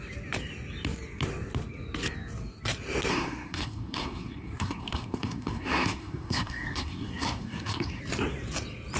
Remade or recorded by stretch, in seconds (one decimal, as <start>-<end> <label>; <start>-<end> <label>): 0.0-3.1 recorded; 3.1-8.0 remade; 8.0-9.0 recorded